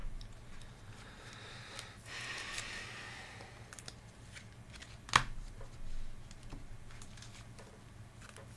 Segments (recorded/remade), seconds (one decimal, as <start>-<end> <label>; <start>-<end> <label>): 0.0-8.6 recorded